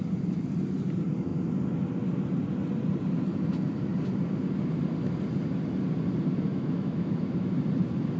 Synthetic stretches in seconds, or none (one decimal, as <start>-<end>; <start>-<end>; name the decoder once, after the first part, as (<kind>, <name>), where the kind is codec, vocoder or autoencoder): 6.5-7.5 (autoencoder, DAC-VAE)